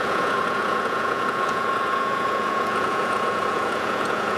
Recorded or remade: remade